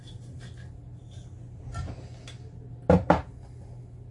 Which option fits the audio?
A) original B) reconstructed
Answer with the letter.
A